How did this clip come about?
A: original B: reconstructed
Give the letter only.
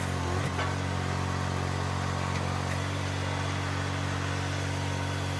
A